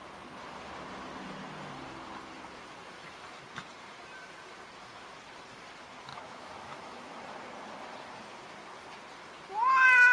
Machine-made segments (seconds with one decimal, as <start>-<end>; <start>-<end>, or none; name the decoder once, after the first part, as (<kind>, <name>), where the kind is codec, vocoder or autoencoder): 6.1-7.2 (autoencoder, DAC-VAE)